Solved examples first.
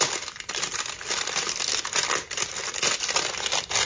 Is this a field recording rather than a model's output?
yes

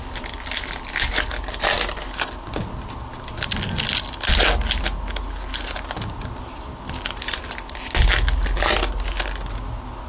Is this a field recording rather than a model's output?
yes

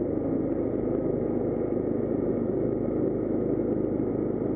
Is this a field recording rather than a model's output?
yes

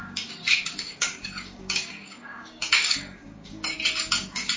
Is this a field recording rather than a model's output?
no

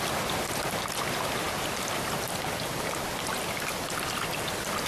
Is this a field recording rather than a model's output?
yes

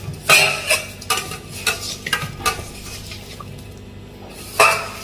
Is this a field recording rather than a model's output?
yes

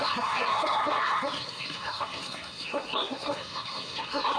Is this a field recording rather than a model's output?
no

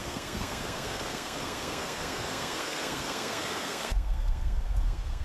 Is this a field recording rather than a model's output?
no